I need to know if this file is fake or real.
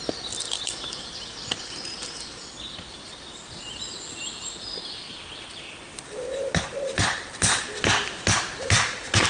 real